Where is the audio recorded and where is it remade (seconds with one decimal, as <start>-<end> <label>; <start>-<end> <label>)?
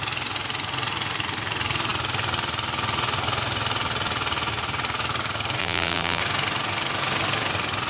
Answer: 0.0-5.6 recorded; 5.6-6.2 remade; 6.2-7.9 recorded